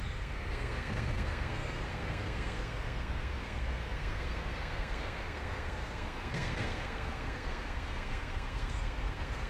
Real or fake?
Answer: fake